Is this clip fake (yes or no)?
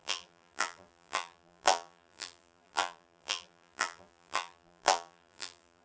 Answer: yes